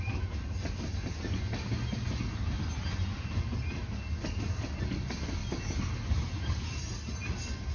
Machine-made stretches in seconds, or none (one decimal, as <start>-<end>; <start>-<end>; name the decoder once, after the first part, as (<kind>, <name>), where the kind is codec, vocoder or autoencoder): none